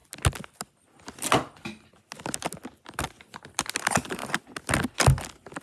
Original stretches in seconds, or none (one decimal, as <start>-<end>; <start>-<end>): 0.0-5.6